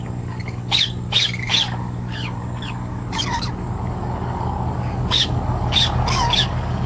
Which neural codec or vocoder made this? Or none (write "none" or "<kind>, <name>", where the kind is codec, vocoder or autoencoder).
codec, DAC